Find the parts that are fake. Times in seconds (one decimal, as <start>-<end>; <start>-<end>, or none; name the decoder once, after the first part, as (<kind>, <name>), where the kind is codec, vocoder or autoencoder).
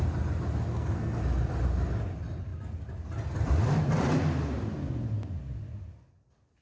0.7-1.2 (codec, SNAC)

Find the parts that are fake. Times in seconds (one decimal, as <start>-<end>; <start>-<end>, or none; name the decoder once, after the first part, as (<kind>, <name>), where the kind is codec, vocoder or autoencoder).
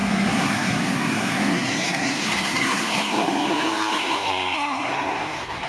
0.0-5.7 (codec, SNAC)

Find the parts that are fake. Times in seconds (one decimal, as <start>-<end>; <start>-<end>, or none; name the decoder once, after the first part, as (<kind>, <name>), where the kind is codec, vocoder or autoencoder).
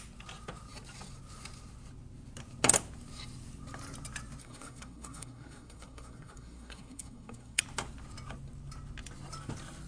4.4-7.6 (codec, SNAC)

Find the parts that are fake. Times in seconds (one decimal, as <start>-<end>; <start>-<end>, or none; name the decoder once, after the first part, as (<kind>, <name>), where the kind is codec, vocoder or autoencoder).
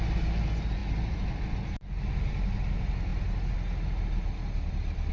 none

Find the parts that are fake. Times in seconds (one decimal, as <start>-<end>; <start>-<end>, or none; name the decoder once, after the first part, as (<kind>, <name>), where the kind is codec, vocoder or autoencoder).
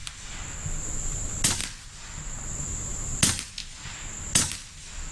none